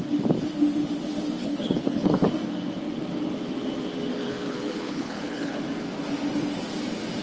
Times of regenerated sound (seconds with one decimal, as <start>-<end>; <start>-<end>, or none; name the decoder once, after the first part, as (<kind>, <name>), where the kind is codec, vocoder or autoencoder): 1.4-2.3 (codec, HILCodec); 4.2-5.6